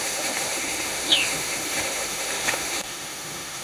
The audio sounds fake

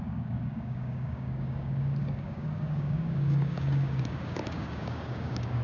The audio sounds fake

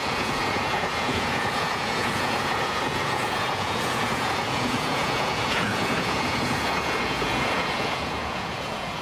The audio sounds fake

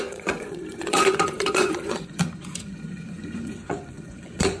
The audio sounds fake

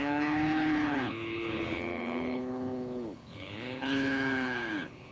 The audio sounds fake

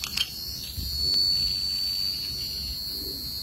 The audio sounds real